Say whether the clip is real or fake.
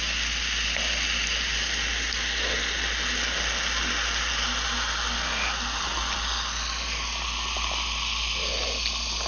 real